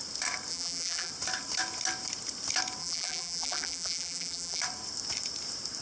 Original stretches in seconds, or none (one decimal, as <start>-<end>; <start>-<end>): 0.0-0.5; 1.1-2.8; 4.6-5.8